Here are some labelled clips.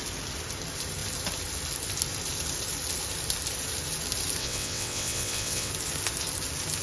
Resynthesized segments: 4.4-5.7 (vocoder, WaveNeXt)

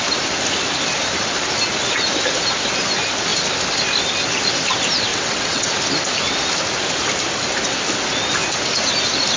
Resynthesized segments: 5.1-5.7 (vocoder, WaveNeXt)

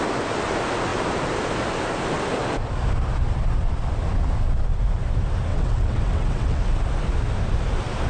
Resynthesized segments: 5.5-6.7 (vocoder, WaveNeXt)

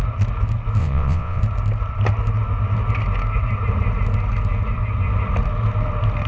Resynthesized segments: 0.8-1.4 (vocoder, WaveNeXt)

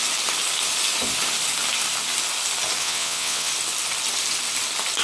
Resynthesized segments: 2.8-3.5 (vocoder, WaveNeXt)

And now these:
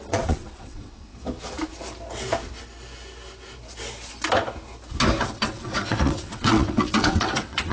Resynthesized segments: 0.0-1.1 (vocoder, WaveNeXt); 5.2-7.7